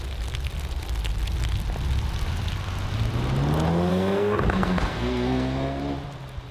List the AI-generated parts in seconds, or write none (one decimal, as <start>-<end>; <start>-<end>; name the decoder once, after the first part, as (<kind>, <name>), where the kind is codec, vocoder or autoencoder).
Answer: 3.9-5.8 (codec, SNAC)